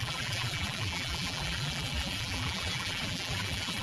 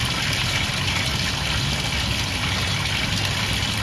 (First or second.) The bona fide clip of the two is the second